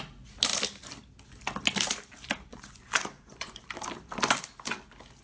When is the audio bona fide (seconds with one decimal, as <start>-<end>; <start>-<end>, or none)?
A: 0.0-2.5; 3.7-5.2